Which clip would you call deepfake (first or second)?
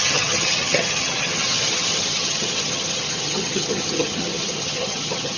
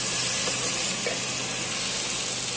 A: first